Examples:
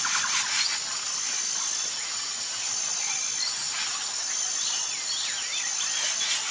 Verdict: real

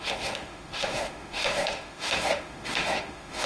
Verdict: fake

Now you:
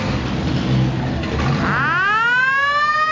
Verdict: real